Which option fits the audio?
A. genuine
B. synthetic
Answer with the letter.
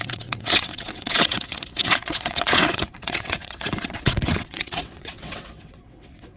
B